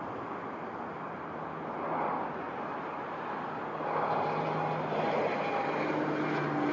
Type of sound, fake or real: real